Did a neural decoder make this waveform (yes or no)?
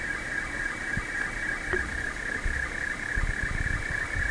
no